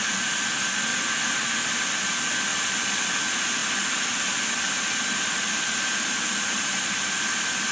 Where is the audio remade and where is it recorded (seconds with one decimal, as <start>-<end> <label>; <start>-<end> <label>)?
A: 0.0-0.9 recorded; 0.9-1.7 remade; 1.7-2.5 recorded; 2.5-3.2 remade; 3.2-3.6 recorded; 3.6-7.2 remade; 7.2-7.7 recorded